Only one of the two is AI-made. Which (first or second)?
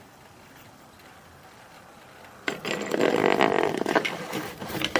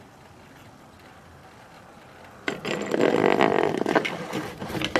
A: first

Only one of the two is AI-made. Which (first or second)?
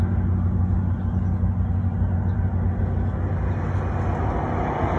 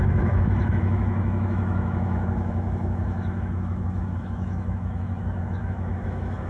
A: second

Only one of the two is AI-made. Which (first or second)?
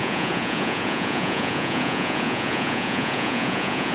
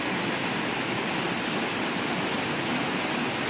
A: first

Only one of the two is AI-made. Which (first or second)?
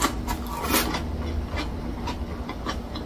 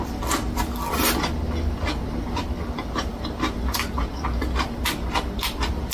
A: second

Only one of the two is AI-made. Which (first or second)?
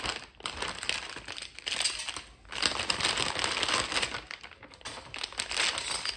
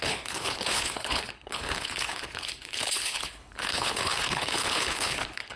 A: second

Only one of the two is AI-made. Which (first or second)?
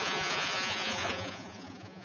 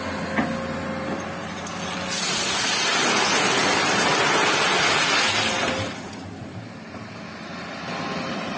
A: first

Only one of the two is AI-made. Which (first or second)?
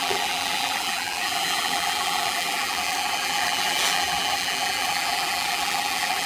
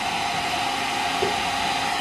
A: first